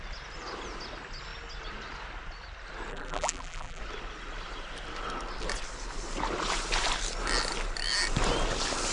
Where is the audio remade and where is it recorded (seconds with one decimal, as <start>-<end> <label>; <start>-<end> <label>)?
0.0-2.9 recorded; 2.9-3.8 remade; 3.8-8.9 recorded